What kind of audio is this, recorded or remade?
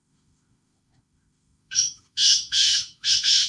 remade